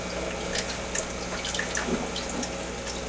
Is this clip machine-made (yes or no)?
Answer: no